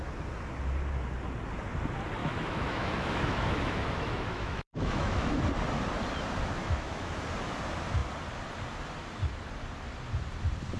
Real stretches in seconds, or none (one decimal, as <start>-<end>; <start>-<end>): 0.0-2.2; 5.3-6.6; 7.1-10.8